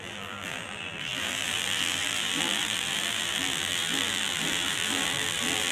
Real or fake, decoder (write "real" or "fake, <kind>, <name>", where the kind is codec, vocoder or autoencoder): fake, vocoder, BigVGAN v2